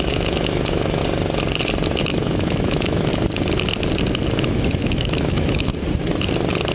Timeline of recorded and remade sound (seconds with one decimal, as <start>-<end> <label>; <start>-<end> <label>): 0.0-1.0 remade; 1.0-2.0 recorded; 2.0-3.1 remade; 3.1-4.4 recorded; 4.4-5.7 remade; 5.7-6.7 recorded